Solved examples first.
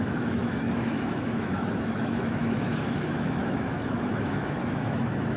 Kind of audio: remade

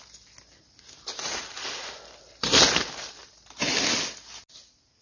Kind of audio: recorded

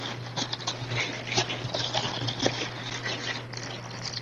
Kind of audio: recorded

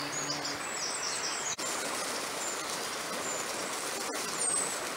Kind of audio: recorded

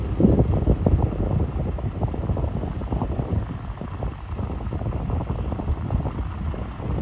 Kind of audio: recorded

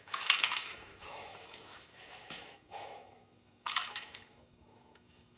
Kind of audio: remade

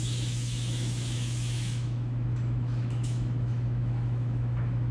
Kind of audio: remade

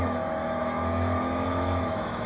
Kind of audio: remade